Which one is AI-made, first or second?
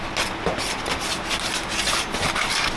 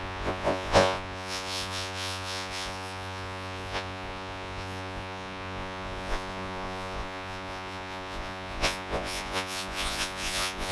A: second